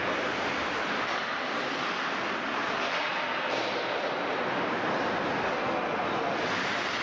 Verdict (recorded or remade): recorded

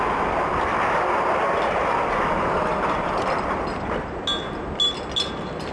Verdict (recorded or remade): recorded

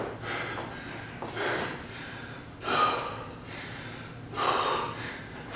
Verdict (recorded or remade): recorded